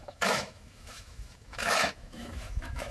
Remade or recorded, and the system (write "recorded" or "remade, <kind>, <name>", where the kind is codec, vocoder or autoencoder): remade, autoencoder, DAC-VAE